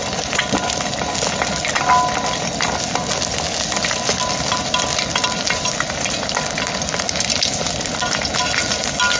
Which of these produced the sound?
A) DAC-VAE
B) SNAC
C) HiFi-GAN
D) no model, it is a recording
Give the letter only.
D